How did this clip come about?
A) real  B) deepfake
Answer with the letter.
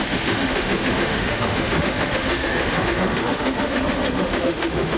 B